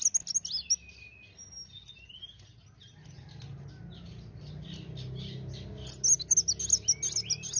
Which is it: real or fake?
real